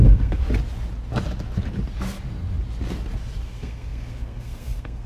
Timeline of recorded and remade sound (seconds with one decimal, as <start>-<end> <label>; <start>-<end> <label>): 0.0-0.4 remade; 0.4-3.5 recorded; 3.5-5.1 remade